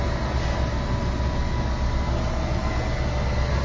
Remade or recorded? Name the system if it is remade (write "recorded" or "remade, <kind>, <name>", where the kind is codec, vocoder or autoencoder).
recorded